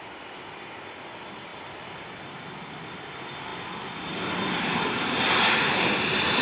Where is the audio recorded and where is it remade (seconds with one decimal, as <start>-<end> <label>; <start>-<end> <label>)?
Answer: 0.0-6.4 recorded